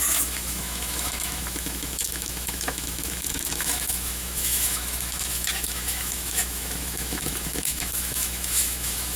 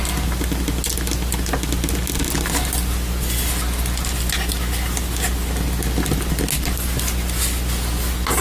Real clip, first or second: second